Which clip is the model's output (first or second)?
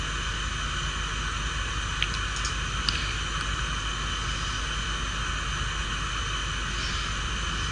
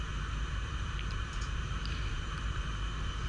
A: second